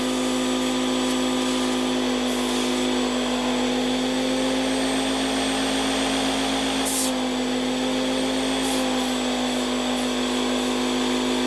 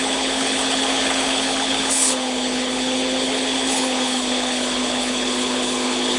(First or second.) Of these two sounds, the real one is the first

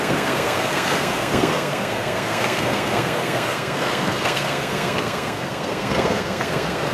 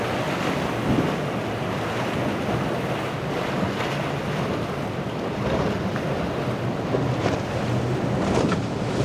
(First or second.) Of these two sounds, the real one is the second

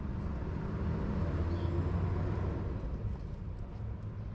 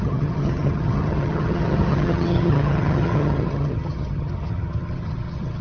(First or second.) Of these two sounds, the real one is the first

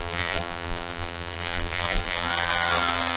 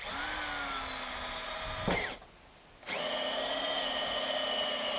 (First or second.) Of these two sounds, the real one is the second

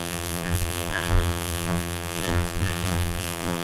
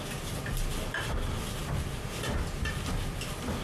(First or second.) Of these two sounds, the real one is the second